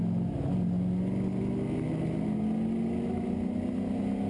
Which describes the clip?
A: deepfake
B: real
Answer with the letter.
B